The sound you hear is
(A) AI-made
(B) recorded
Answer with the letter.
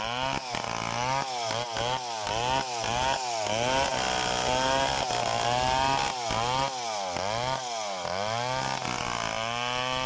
B